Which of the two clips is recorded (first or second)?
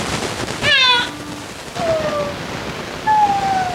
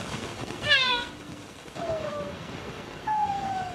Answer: first